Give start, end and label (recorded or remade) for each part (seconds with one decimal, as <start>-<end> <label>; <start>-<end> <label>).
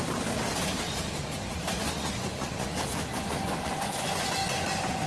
0.0-1.8 recorded; 1.8-5.1 remade